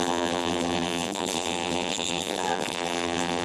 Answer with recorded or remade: remade